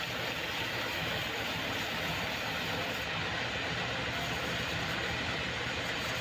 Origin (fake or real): real